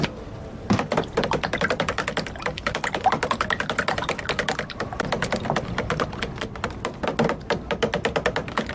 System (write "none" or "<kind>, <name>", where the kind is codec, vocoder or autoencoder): none